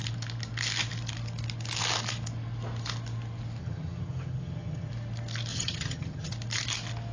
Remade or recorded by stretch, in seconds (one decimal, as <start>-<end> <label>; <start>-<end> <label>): 0.0-3.6 recorded; 3.6-4.9 remade; 4.9-5.5 recorded; 5.5-6.3 remade; 6.3-7.1 recorded